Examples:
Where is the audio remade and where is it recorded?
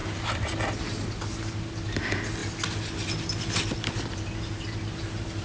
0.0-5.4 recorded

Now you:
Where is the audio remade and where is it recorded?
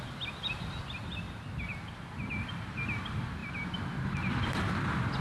0.0-5.2 recorded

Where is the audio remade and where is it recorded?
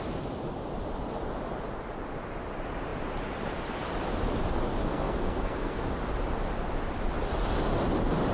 0.0-4.8 recorded; 4.8-5.8 remade; 5.8-8.3 recorded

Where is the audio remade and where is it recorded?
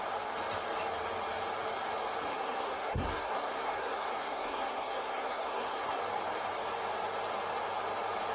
0.0-2.3 recorded; 2.3-6.0 remade; 6.0-8.3 recorded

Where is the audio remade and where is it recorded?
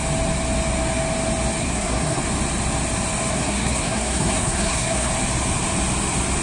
0.0-1.6 recorded; 1.6-2.2 remade; 2.2-3.3 recorded; 3.3-5.1 remade; 5.1-6.4 recorded